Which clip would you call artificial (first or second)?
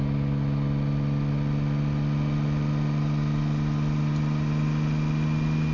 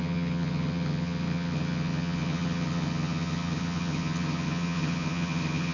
second